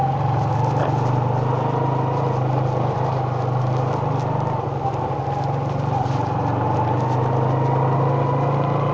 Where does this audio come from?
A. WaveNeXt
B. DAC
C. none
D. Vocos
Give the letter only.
C